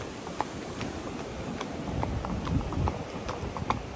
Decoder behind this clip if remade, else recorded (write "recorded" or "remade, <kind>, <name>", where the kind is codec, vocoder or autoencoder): recorded